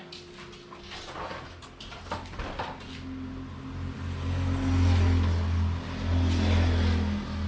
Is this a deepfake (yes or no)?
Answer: no